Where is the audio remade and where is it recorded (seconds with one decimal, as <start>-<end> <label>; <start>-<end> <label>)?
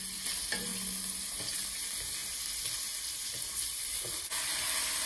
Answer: 0.0-5.1 recorded